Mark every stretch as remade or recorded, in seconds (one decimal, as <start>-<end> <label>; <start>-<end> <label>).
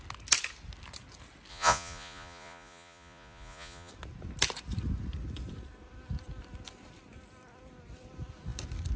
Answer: 0.0-1.5 recorded; 1.5-3.9 remade; 3.9-9.0 recorded